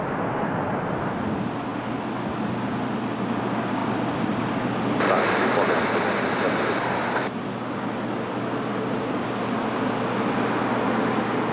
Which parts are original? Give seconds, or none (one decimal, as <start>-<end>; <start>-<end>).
0.0-3.8; 7.4-11.5